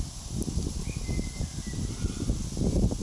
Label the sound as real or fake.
real